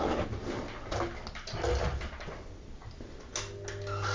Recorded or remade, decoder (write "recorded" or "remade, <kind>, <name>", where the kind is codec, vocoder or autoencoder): recorded